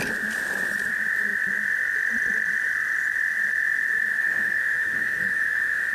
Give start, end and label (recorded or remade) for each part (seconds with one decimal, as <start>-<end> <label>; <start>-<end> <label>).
0.0-4.2 recorded; 4.2-5.9 remade